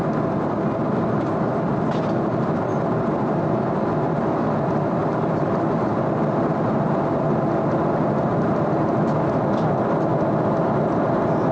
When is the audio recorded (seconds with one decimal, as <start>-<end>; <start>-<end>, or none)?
0.0-5.0; 6.0-11.5